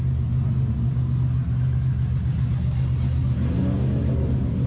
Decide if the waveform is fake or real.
real